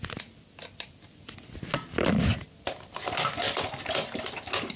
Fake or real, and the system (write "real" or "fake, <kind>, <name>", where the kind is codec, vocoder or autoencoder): real